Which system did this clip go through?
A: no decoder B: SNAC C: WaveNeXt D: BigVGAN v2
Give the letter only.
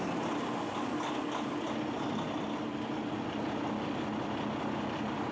A